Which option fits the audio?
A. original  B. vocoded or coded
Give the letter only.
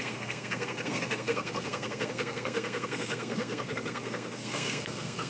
B